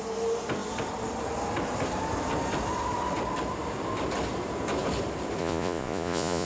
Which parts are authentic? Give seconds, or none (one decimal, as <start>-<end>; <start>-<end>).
0.0-5.4